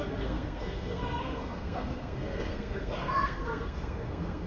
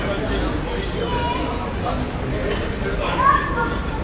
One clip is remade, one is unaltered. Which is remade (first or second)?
first